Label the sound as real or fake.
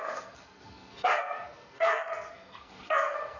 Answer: fake